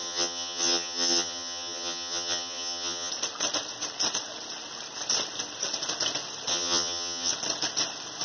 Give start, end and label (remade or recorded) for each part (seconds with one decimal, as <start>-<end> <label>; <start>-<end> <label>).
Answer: 0.0-3.1 remade; 3.1-6.5 recorded; 6.5-7.3 remade; 7.3-8.2 recorded